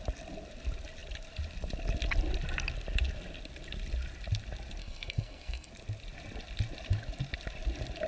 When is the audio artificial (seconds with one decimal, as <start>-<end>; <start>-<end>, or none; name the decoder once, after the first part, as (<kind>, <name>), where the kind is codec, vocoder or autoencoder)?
4.8-5.7 (codec, SNAC)